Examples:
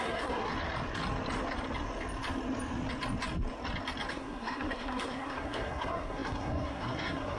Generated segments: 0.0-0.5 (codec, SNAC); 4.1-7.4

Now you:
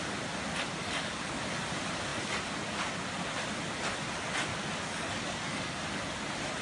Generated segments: 0.8-1.4 (codec, DAC); 4.5-5.7

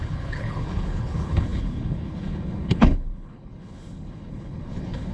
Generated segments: 0.0-5.1 (codec, HILCodec)